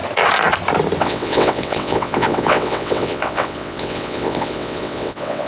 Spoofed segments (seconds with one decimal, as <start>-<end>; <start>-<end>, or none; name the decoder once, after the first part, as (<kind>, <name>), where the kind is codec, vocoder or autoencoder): 1.0-5.5 (vocoder, WaveNeXt)